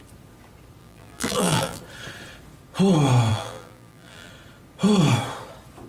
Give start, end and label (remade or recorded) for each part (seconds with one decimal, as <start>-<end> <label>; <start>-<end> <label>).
0.0-0.8 recorded; 0.8-1.8 remade; 1.8-3.3 recorded; 3.3-4.3 remade; 4.3-5.9 recorded